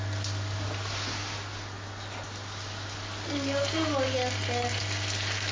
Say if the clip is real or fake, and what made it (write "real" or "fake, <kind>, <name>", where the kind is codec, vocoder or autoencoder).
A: real